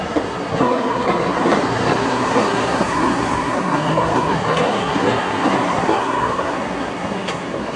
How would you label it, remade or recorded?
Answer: remade